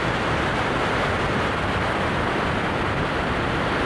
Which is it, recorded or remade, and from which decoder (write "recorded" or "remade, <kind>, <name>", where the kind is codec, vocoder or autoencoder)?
recorded